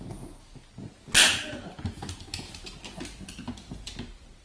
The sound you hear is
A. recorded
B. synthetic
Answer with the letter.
A